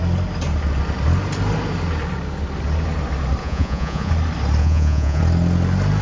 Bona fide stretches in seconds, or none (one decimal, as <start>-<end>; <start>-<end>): 0.0-3.4; 4.1-4.6; 5.2-6.0